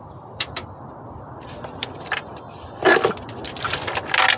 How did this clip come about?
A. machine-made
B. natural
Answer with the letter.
A